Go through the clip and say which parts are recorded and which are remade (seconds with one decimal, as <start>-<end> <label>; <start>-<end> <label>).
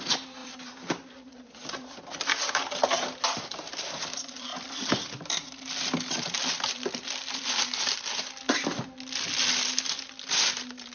0.0-0.4 recorded; 0.4-2.1 remade; 2.1-4.5 recorded; 4.5-7.6 remade; 7.6-10.9 recorded